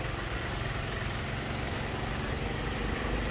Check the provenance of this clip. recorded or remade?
recorded